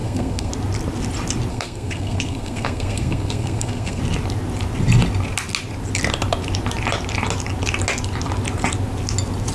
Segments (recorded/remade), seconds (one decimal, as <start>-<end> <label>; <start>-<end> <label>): 0.0-0.5 remade; 0.5-1.5 recorded; 1.5-4.0 remade; 4.0-9.5 recorded